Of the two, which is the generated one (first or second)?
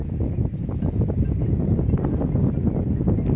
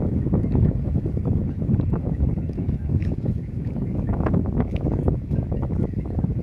second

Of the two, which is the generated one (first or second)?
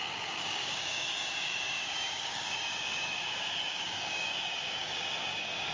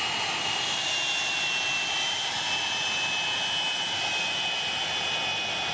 first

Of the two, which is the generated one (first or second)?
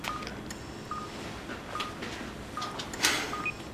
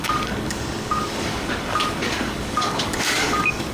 second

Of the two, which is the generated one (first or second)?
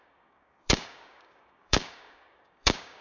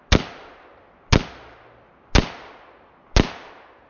first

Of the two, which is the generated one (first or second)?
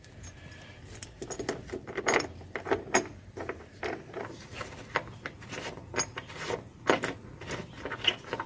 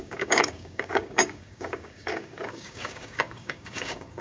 second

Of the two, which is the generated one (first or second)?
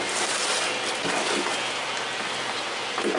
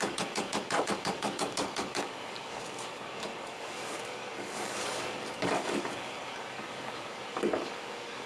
second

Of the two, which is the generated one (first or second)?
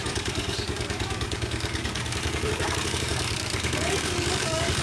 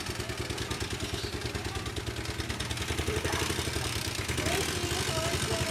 first